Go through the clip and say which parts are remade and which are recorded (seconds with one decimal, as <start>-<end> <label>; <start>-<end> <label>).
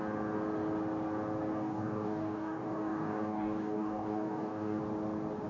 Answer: 0.0-1.5 recorded; 1.5-4.8 remade; 4.8-5.5 recorded